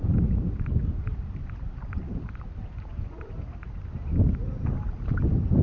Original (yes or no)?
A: yes